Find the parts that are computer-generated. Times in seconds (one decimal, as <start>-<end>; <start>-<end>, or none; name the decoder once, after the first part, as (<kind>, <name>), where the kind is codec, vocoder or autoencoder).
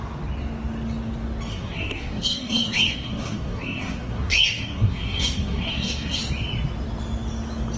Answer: 1.5-6.2 (codec, SNAC)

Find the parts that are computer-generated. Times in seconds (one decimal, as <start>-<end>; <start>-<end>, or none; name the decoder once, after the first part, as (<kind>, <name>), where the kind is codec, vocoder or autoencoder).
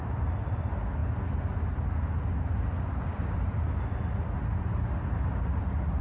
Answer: none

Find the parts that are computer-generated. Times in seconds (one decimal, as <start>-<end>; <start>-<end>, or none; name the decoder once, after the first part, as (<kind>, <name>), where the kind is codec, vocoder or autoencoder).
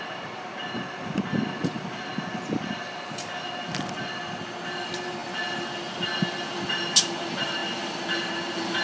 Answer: none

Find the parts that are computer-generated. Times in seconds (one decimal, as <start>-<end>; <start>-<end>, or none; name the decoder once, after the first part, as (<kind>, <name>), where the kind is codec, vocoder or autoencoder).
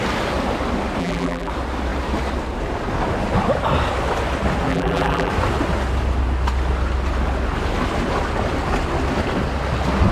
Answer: 1.0-1.5 (vocoder, BigVGAN v2); 4.7-5.3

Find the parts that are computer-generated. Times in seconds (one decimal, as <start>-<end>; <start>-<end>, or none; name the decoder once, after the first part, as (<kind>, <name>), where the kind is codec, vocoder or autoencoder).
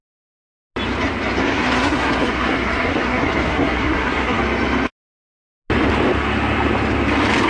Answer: 1.4-4.4 (codec, SNAC)